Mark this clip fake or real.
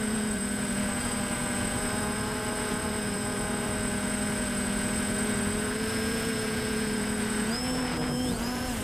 fake